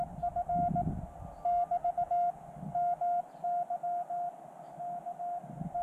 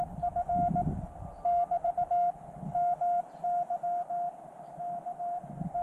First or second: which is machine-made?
second